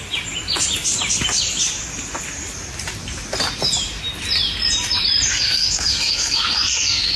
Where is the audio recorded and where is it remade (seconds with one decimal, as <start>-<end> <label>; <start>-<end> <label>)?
0.0-5.3 recorded; 5.3-7.2 remade